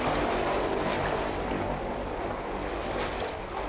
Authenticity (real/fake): real